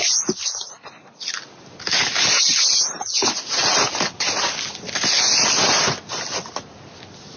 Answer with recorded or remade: recorded